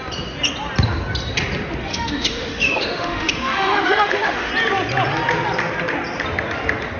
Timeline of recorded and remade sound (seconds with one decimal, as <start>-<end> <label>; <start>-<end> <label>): 0.0-1.9 recorded; 1.9-4.5 remade; 4.5-7.0 recorded